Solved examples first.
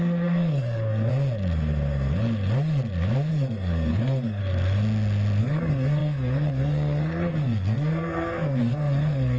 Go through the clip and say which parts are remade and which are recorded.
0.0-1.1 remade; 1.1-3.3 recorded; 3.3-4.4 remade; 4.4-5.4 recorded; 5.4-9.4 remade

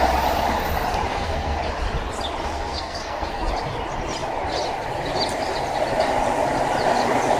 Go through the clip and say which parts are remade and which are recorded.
0.0-1.1 recorded; 1.1-1.6 remade; 1.6-2.4 recorded; 2.4-3.5 remade; 3.5-7.4 recorded

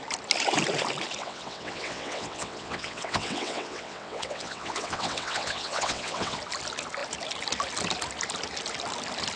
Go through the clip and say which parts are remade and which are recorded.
0.0-1.2 recorded; 1.2-6.4 remade; 6.4-9.4 recorded

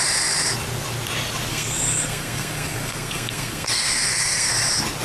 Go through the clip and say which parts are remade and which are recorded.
0.0-1.5 recorded; 1.5-4.5 remade; 4.5-5.0 recorded

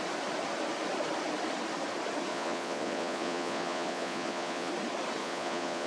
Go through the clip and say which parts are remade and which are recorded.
0.0-2.3 recorded; 2.3-4.7 remade; 4.7-5.2 recorded; 5.2-5.9 remade

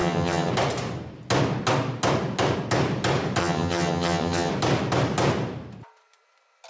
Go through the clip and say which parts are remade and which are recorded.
0.0-0.5 remade; 0.5-3.4 recorded; 3.4-4.5 remade; 4.5-6.7 recorded

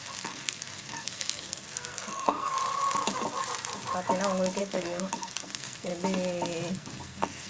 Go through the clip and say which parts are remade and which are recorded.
0.0-2.6 remade; 2.6-4.6 recorded; 4.6-5.9 remade; 5.9-6.7 recorded; 6.7-7.5 remade

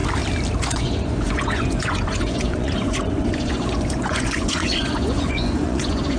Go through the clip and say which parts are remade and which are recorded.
0.0-0.6 recorded; 0.6-6.2 remade